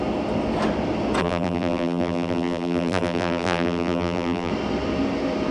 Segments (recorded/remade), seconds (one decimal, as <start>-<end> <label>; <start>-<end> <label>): 0.0-1.2 recorded; 1.2-4.5 remade; 4.5-5.5 recorded